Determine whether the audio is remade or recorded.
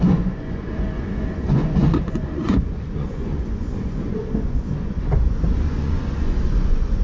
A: remade